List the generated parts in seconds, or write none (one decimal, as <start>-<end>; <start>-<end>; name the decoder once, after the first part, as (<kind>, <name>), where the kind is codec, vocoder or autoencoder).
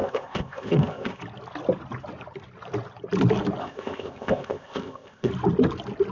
0.0-1.2 (codec, ZipCodec); 3.6-5.3